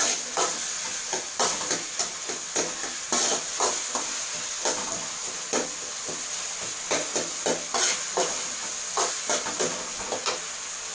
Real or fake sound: real